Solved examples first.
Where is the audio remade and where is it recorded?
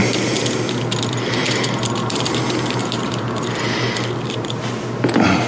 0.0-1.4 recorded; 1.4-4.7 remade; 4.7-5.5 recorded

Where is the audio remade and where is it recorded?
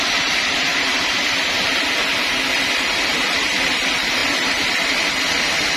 0.0-0.9 remade; 0.9-2.6 recorded; 2.6-5.8 remade